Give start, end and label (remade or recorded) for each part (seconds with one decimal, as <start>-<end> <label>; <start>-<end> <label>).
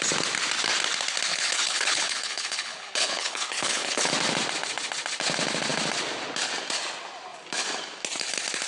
0.0-1.3 recorded; 1.3-4.1 remade; 4.1-8.7 recorded